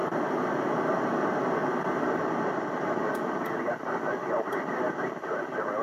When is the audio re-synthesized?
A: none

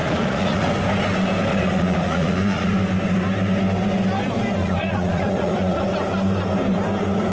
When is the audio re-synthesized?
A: 0.0-0.7; 1.5-2.7; 4.6-5.8

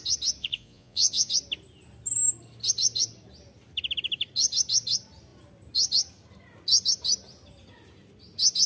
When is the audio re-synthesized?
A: 0.4-1.3

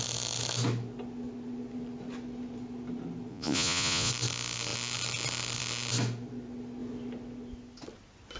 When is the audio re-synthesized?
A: 3.3-4.1

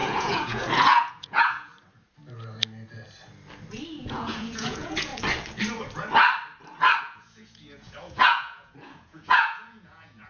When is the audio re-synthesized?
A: 0.0-1.7; 4.0-5.1; 7.0-10.3

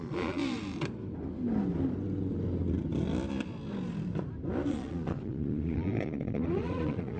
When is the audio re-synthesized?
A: 0.0-0.4; 4.7-7.2

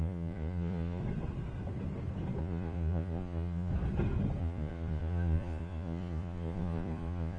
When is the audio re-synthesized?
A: 0.0-1.0; 2.4-3.7; 4.4-7.4

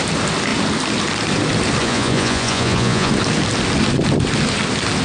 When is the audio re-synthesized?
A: 1.8-3.1